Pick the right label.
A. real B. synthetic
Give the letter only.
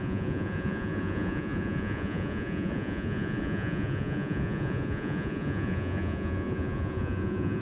B